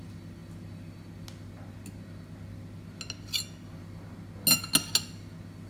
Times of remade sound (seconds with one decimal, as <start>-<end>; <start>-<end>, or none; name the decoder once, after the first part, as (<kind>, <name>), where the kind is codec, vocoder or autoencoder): none